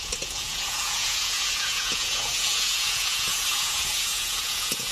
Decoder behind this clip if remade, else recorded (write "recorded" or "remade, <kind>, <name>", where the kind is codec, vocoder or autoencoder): remade, vocoder, Vocos